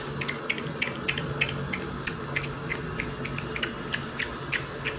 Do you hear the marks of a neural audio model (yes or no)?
no